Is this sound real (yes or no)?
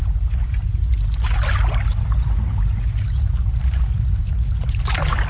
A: yes